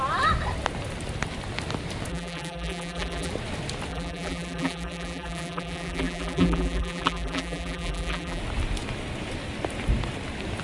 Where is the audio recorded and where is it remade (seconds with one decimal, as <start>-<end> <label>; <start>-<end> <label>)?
0.0-2.1 recorded; 2.1-3.3 remade; 3.3-3.9 recorded; 3.9-8.4 remade; 8.4-10.6 recorded